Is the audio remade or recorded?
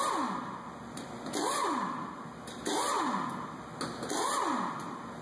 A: recorded